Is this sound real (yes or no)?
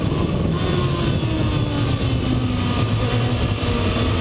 yes